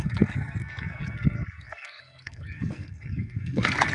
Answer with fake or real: fake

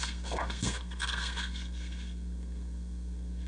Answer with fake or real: fake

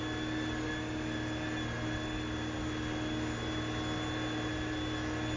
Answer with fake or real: real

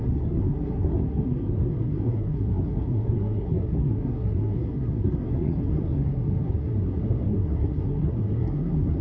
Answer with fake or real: fake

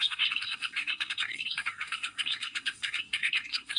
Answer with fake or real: fake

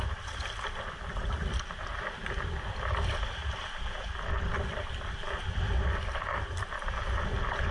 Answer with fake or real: real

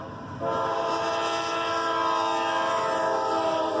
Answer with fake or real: real